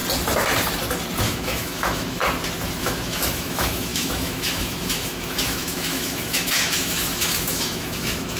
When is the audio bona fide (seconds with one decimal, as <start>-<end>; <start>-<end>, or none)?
0.0-1.2; 2.2-2.8